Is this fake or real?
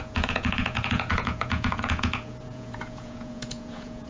fake